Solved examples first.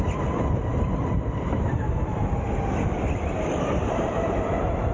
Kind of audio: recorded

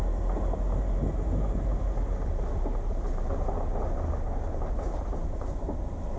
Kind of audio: recorded